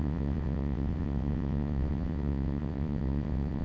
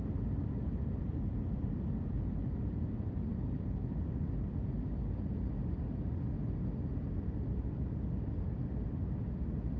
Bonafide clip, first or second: second